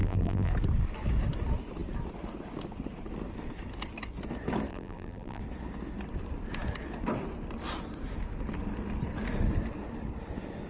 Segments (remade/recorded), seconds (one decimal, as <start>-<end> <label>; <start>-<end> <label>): 0.0-0.5 remade; 0.5-4.7 recorded; 4.7-5.4 remade; 5.4-10.7 recorded